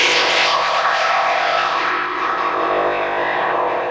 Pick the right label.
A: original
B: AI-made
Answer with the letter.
B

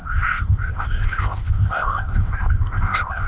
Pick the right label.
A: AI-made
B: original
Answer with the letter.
A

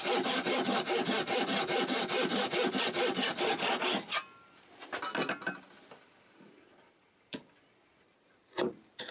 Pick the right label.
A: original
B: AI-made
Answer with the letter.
A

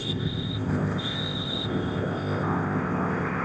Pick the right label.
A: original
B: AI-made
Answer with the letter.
B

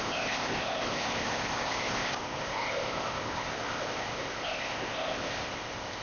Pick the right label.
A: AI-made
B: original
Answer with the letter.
A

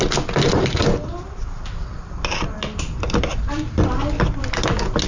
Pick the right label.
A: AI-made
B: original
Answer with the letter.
B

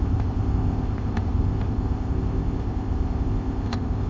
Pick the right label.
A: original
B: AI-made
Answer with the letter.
B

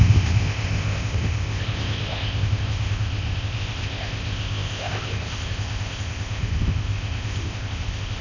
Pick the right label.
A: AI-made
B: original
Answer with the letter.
A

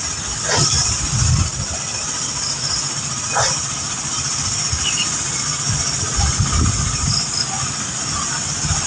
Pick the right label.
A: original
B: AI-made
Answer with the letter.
A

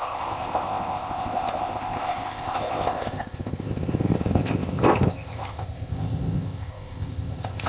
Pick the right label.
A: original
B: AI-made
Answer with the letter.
B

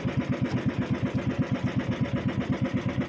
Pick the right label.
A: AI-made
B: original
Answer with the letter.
B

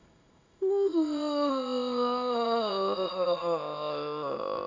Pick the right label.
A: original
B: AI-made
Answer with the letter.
B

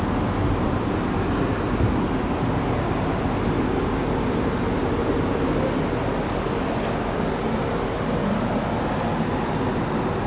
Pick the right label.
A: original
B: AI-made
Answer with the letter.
A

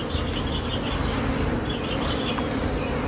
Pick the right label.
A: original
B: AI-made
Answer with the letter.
A